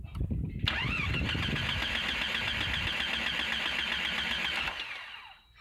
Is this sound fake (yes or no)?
no